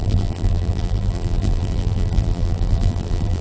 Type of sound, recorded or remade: remade